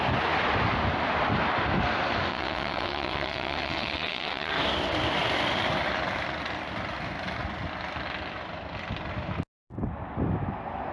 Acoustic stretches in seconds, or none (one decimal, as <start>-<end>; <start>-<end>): 0.0-2.3; 4.5-10.9